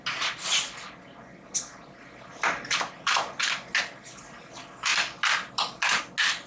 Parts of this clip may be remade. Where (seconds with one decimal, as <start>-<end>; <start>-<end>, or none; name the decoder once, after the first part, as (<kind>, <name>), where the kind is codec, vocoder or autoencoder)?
none